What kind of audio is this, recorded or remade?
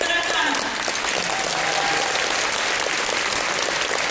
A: recorded